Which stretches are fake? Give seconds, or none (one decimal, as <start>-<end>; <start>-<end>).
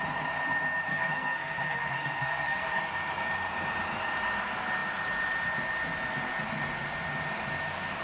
0.9-2.8